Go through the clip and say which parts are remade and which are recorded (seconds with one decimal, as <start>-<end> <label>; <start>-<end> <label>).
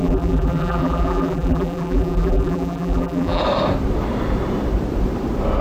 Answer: 0.0-3.4 remade; 3.4-5.6 recorded